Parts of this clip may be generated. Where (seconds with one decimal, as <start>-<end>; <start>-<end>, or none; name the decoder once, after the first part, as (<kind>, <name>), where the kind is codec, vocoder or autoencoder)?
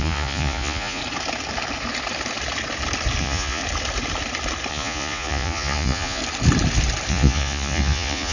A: 0.0-1.0 (vocoder, Vocos); 3.2-3.6; 4.7-6.2; 7.1-8.3